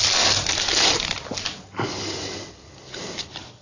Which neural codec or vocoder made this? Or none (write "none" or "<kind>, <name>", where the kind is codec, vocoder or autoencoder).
none